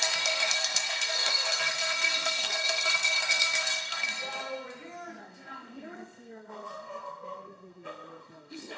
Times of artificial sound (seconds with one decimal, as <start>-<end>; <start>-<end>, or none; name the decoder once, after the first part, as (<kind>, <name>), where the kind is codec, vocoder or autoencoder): 0.0-4.1 (codec, SNAC); 5.2-8.8